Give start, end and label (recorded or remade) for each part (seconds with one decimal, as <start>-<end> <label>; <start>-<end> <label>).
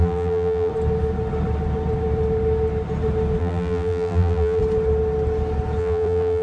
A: 0.0-0.7 remade; 0.7-3.4 recorded; 3.4-4.6 remade; 4.6-5.8 recorded; 5.8-6.4 remade